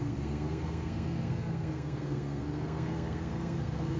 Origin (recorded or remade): remade